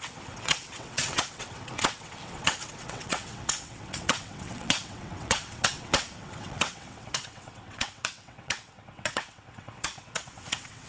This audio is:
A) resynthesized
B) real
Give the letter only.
A